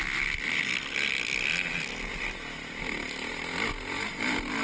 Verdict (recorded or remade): recorded